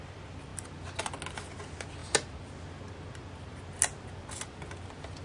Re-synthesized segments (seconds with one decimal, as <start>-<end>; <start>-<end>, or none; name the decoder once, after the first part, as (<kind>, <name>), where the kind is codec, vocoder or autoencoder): none